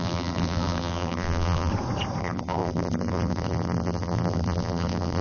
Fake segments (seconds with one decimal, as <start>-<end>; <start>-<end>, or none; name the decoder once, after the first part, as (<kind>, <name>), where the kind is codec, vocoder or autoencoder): 0.0-1.7 (vocoder, BigVGAN v2); 2.2-5.2